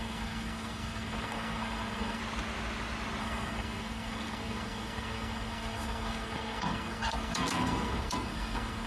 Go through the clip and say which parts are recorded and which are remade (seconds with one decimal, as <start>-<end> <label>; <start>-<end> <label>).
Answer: 0.0-2.2 remade; 2.2-3.2 recorded; 3.2-8.9 remade